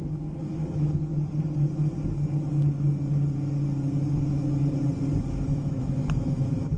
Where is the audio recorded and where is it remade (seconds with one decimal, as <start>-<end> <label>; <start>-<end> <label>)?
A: 0.0-1.1 remade; 1.1-5.2 recorded; 5.2-6.8 remade